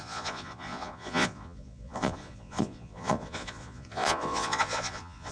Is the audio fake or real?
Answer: fake